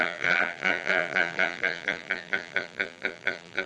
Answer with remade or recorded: remade